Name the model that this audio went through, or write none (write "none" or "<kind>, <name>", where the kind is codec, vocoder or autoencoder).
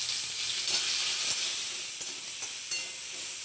none